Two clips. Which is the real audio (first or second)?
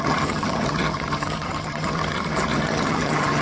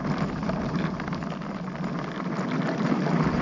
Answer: second